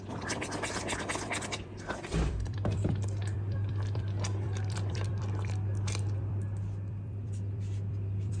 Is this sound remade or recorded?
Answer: remade